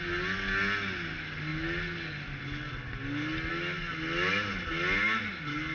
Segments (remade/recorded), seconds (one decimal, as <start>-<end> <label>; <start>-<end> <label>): 0.0-5.7 recorded

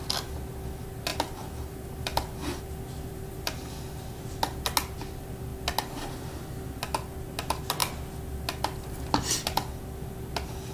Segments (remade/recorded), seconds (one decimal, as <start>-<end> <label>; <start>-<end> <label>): 0.0-1.1 recorded; 1.1-4.1 remade; 4.1-10.7 recorded

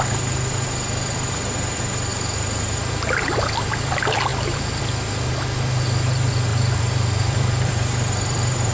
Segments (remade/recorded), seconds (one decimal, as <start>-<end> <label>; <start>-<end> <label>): 0.0-2.1 recorded; 2.1-2.9 remade; 2.9-4.3 recorded; 4.3-4.8 remade; 4.8-6.5 recorded; 6.5-8.7 remade

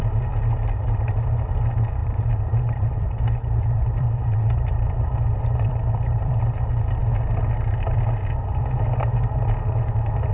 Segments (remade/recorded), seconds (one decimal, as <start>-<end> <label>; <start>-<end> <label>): 0.0-2.0 recorded; 2.0-6.5 remade; 6.5-10.3 recorded

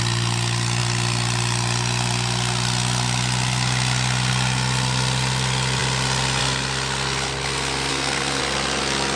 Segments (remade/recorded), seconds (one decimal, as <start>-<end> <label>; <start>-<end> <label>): 0.0-7.9 recorded; 7.9-8.4 remade; 8.4-9.2 recorded

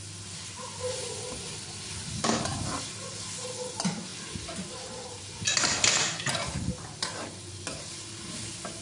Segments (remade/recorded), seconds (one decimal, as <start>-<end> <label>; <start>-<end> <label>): 0.0-8.8 recorded

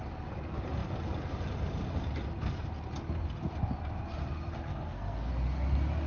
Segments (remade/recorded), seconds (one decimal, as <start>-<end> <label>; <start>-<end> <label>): 0.0-4.7 recorded; 4.7-5.3 remade; 5.3-6.1 recorded